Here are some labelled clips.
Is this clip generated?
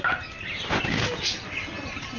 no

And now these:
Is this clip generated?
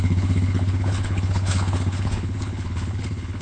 yes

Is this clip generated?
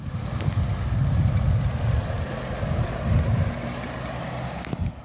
no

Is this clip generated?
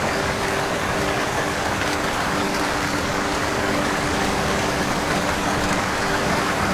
yes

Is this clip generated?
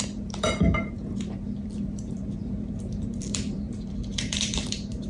yes